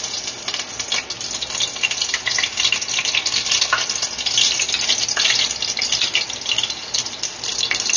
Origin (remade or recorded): recorded